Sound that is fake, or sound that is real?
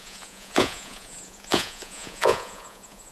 fake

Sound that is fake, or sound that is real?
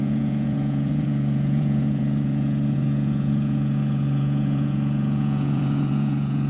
fake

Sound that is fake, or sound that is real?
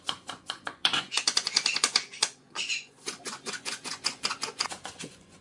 fake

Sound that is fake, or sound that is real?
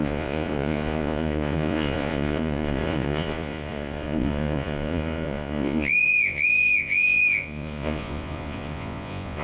fake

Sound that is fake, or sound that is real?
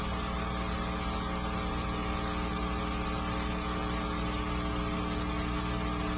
real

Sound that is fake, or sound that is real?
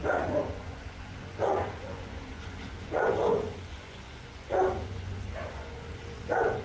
fake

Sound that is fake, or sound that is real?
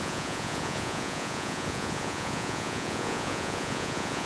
fake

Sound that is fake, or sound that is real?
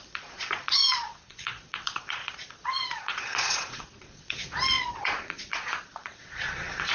fake